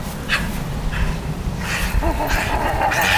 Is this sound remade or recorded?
recorded